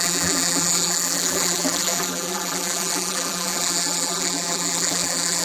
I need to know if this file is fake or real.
fake